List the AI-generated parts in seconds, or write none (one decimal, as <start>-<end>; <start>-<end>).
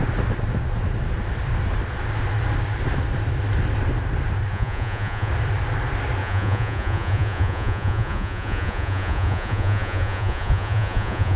4.5-5.3; 6.2-11.4